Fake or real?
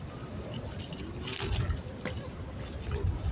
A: real